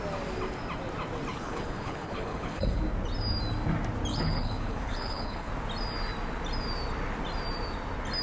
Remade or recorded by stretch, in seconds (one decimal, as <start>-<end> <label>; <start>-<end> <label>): 0.0-1.3 recorded; 1.3-2.8 remade; 2.8-4.1 recorded; 4.1-5.5 remade; 5.5-8.2 recorded